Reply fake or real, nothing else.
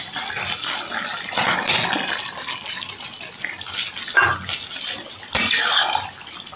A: real